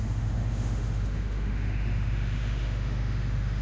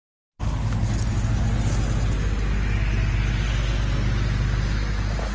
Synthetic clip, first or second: first